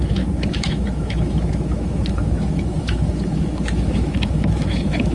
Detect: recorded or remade remade